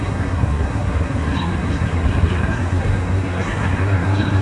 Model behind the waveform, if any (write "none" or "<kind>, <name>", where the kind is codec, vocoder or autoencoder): codec, SNAC